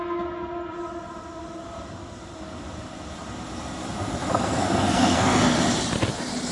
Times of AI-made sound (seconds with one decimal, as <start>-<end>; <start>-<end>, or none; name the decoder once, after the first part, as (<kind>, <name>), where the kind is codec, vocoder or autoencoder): 4.3-5.6 (codec, SNAC)